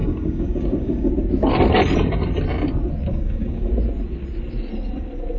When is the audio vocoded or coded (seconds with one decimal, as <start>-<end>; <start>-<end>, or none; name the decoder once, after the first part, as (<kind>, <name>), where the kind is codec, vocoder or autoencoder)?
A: 0.0-1.1 (codec, DAC); 3.1-3.7